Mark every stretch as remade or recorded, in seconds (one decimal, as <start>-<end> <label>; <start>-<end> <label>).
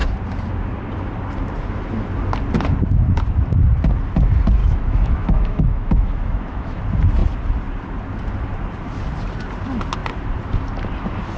0.0-4.6 recorded; 4.6-6.8 remade; 6.8-11.4 recorded